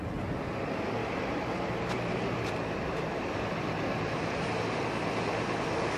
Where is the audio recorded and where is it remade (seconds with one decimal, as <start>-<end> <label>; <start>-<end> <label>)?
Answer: 0.0-1.0 recorded; 1.0-4.6 remade; 4.6-6.0 recorded